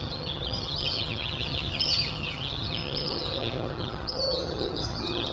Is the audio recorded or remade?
remade